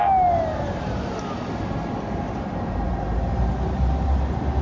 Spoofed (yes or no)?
no